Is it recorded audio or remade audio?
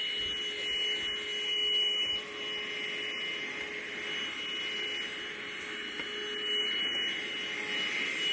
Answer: recorded